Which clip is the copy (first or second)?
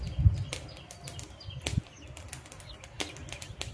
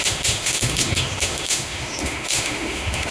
second